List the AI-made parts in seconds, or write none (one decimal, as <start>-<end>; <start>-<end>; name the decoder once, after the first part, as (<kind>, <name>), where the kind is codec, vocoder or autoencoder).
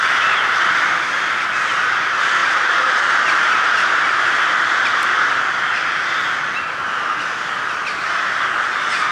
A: 2.4-5.3 (vocoder, BigVGAN v2)